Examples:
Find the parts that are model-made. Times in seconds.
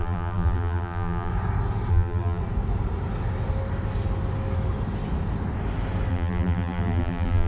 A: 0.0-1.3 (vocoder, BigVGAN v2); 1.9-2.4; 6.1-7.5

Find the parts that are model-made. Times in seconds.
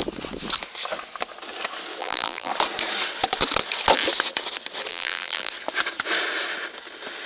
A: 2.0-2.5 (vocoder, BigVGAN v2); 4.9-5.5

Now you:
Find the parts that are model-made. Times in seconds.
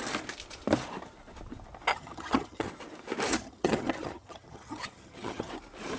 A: 1.9-2.7 (vocoder, HiFi-GAN); 3.3-5.5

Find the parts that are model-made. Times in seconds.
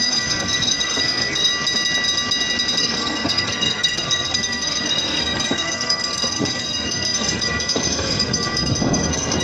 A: 0.0-1.5 (codec, SNAC); 2.8-9.4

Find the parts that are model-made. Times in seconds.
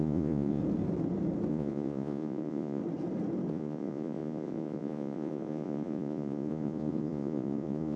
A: 0.0-0.6 (vocoder, Vocos); 1.5-2.8; 3.5-8.0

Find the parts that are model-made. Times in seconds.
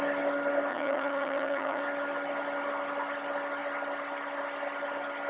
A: 0.7-1.8 (vocoder, HiFi-GAN)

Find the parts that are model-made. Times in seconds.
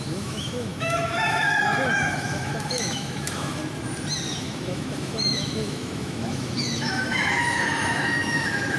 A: 0.0-3.6 (autoencoder, DAC-VAE); 4.4-8.8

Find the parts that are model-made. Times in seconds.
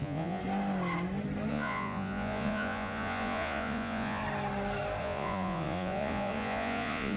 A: 0.0-0.4 (vocoder, Vocos); 1.5-4.2; 5.0-7.2